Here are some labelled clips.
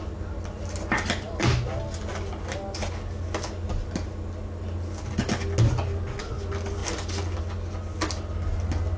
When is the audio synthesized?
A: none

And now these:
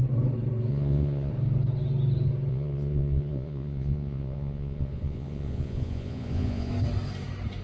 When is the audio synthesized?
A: 0.7-1.3 (vocoder, Vocos); 2.5-6.7

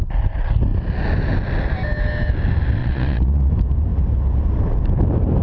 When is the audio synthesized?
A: 2.8-3.5 (vocoder, Vocos)

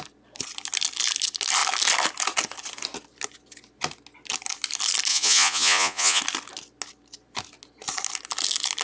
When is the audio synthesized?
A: 5.1-6.2 (vocoder, Vocos)

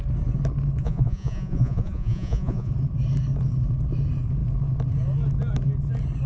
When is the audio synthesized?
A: 0.8-2.7 (vocoder, Vocos)